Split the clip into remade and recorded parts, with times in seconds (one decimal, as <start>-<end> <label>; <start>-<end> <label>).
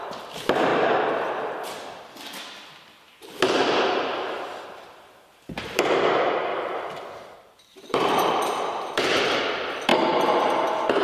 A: 0.0-6.5 recorded; 6.5-9.4 remade; 9.4-11.0 recorded